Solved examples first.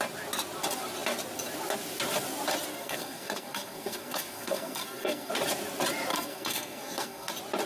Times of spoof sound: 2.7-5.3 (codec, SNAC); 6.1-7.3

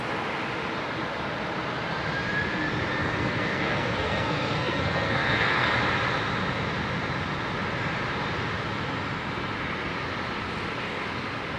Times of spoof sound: 3.0-5.7 (codec, SNAC)

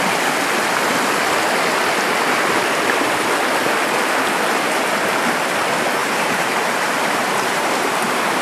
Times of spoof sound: 6.0-7.9 (vocoder, BigVGAN v2)

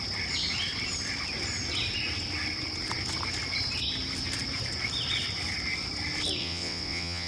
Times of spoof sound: 6.4-7.3 (vocoder, WaveNeXt)

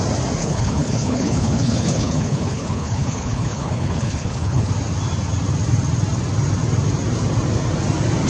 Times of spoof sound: 0.4-4.7 (codec, HILCodec)

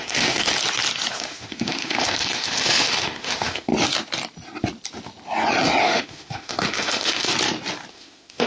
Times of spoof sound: 0.0-0.5 (autoencoder, DAC-VAE); 1.1-3.7; 5.8-7.3; 7.9-8.5

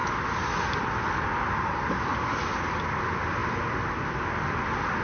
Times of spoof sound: none